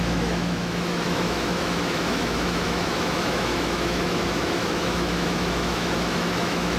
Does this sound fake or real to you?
fake